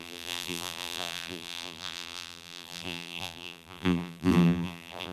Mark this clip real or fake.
fake